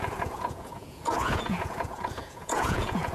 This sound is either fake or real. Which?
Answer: fake